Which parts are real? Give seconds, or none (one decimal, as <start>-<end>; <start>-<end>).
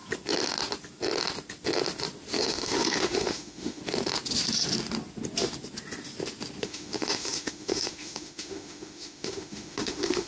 0.0-2.4; 3.8-6.6